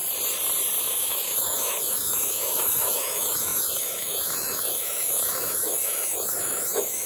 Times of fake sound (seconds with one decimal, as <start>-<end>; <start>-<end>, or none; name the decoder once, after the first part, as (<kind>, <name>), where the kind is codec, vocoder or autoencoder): 0.8-7.1 (autoencoder, DAC-VAE)